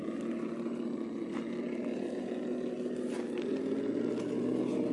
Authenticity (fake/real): real